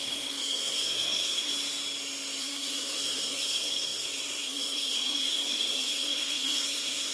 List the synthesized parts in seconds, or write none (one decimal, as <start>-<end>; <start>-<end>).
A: 0.0-1.5; 2.4-7.1